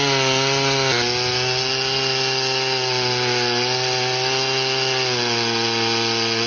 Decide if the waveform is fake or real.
real